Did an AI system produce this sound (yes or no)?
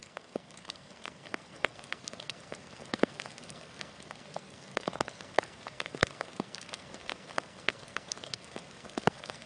yes